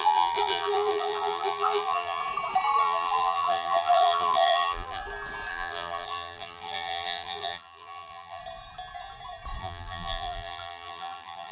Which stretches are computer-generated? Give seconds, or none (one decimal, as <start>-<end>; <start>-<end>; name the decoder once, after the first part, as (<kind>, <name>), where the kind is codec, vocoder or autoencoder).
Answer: 0.0-2.2 (vocoder, BigVGAN v2); 2.8-5.0; 5.5-8.4; 9.6-11.5

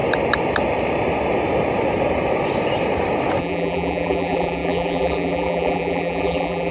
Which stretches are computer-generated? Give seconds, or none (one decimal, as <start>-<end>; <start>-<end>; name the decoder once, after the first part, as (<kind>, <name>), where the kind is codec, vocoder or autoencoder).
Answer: 3.4-6.7 (vocoder, BigVGAN v2)

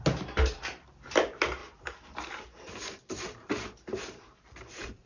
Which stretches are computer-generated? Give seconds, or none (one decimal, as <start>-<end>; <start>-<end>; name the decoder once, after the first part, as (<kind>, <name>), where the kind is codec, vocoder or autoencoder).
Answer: 1.6-5.1 (vocoder, BigVGAN v2)

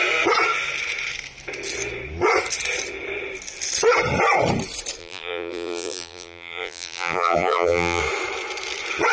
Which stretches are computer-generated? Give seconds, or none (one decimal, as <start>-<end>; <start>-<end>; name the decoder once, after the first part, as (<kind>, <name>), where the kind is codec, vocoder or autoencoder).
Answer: 5.0-8.0 (vocoder, BigVGAN v2)